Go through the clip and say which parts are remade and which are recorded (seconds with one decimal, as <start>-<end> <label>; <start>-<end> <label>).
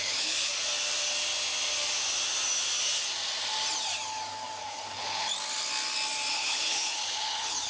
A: 0.0-0.5 remade; 0.5-4.6 recorded; 4.6-5.3 remade; 5.3-6.3 recorded; 6.3-7.7 remade